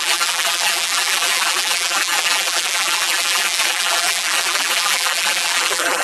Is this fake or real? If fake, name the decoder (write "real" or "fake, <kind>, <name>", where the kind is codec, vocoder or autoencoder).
fake, vocoder, BigVGAN v2